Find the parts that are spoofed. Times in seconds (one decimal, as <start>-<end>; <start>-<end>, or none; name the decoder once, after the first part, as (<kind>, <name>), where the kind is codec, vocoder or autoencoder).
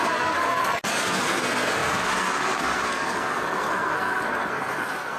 0.0-5.2 (codec, SNAC)